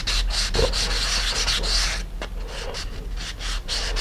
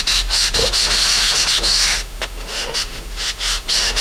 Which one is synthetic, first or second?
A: second